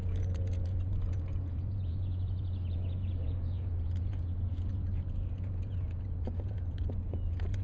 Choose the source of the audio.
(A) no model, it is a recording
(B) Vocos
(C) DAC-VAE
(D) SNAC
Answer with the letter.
B